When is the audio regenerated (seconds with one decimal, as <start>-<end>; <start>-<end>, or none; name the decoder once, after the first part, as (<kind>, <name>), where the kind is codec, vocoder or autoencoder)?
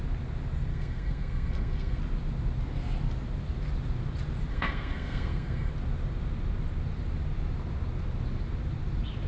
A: 0.7-2.0 (codec, SNAC); 4.5-5.7